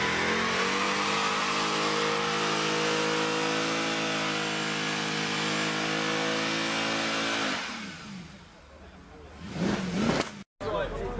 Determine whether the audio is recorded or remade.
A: recorded